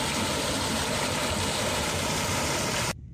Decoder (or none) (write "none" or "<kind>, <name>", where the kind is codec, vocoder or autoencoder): none